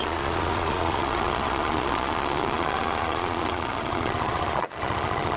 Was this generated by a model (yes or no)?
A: yes